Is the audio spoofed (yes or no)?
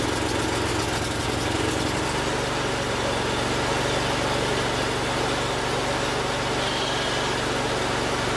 no